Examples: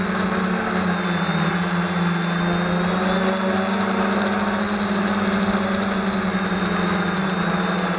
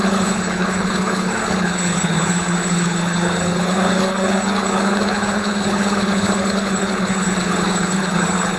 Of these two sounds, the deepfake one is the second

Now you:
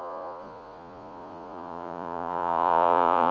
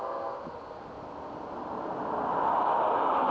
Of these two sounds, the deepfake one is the first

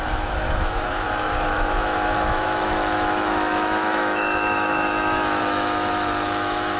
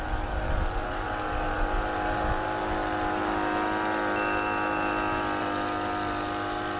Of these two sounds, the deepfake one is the first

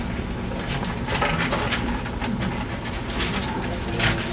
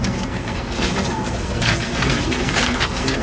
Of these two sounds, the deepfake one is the second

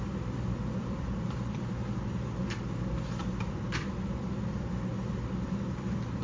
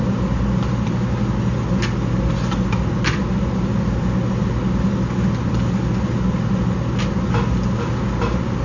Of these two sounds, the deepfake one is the first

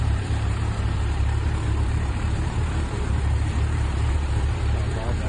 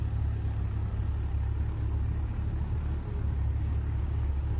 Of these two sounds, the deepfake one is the first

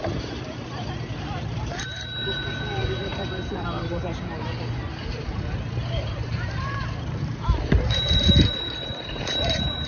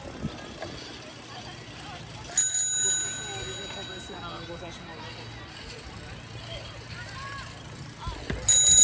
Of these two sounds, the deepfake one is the first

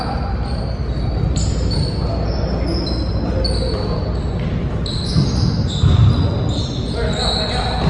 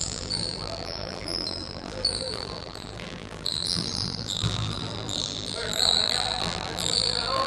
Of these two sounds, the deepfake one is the second